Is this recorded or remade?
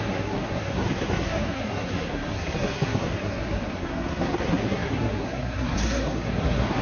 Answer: remade